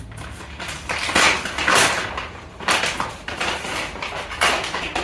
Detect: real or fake real